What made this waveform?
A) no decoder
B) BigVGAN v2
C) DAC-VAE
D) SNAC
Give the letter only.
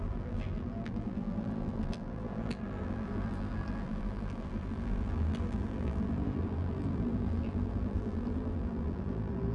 B